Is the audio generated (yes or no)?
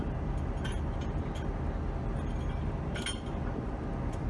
no